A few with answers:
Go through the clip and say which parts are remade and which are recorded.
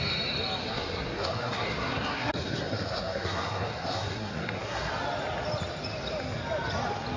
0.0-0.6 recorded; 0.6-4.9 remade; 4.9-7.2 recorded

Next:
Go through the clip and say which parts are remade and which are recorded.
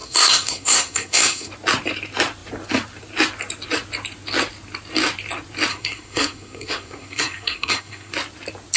0.0-1.5 remade; 1.5-5.7 recorded; 5.7-8.1 remade; 8.1-8.8 recorded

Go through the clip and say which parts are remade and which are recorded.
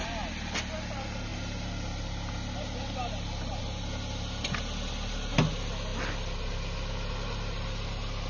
0.0-8.3 recorded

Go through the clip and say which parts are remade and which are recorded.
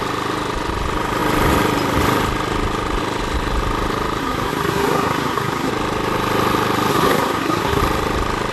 0.0-4.2 recorded; 4.2-5.7 remade; 5.7-6.9 recorded; 6.9-7.8 remade; 7.8-8.5 recorded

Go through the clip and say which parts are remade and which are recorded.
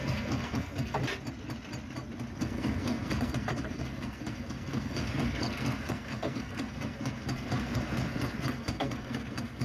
0.0-1.0 remade; 1.0-2.4 recorded; 2.4-9.6 remade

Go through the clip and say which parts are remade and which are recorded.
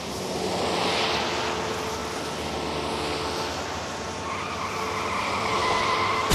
0.0-6.3 recorded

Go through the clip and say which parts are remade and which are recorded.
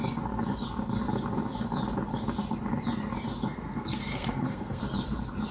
0.0-3.6 recorded; 3.6-4.8 remade; 4.8-5.5 recorded